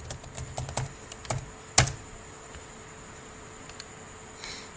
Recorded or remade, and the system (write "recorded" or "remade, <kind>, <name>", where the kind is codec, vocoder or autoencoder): recorded